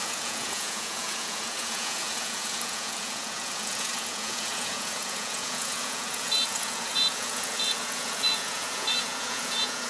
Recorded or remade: remade